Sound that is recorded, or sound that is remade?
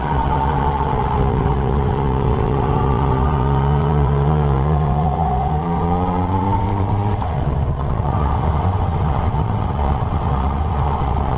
remade